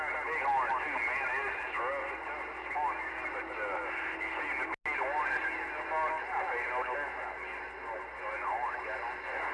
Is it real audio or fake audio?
real